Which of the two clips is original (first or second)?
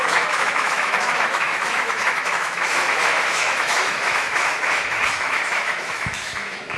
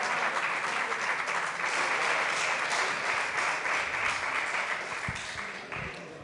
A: second